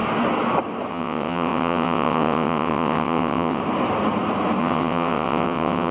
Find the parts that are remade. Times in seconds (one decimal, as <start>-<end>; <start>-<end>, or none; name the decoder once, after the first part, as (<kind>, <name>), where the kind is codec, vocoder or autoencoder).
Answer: 0.9-3.6 (vocoder, WaveNeXt); 4.6-5.9